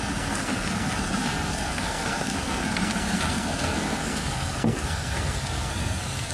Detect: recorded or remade remade